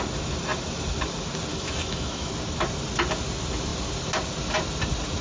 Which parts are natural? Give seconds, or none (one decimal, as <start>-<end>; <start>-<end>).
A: 0.0-1.5; 2.3-5.2